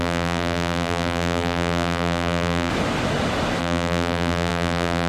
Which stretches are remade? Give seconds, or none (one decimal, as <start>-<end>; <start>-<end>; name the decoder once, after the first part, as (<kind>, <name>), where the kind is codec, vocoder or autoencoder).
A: 0.0-2.7 (vocoder, BigVGAN v2); 3.6-5.1